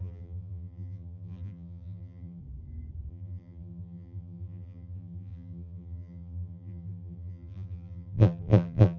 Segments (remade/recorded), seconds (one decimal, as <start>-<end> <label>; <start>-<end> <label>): 0.0-2.4 remade; 2.4-3.1 recorded; 3.1-9.0 remade